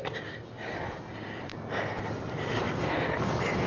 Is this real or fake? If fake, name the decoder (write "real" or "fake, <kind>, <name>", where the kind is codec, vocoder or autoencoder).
real